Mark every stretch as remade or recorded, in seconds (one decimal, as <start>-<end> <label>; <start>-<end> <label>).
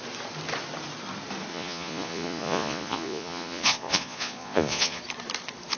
0.0-1.5 recorded; 1.5-5.0 remade; 5.0-5.8 recorded